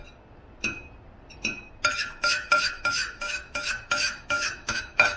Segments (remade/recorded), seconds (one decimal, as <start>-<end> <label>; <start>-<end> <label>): 0.0-1.9 recorded; 1.9-5.2 remade